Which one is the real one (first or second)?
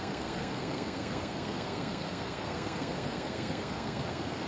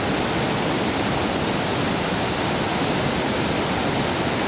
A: second